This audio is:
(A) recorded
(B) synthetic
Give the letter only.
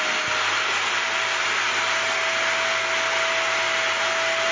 A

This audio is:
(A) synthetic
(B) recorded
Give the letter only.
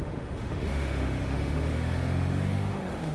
A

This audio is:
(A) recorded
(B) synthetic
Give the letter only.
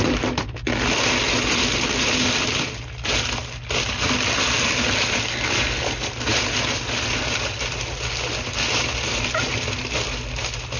A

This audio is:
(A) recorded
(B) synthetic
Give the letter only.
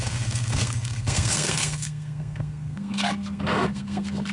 B